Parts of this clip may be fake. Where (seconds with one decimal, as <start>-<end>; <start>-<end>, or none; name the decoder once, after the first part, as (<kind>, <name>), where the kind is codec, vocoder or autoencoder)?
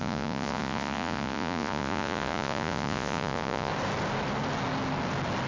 0.0-3.7 (vocoder, Vocos)